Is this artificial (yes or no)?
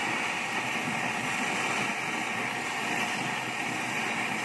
no